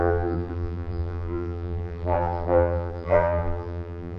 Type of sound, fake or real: fake